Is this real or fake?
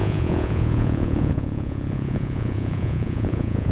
fake